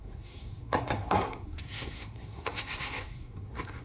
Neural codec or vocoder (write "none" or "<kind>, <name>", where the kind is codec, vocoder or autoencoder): codec, SNAC